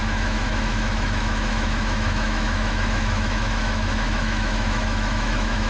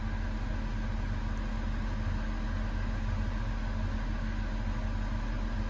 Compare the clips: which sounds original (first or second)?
second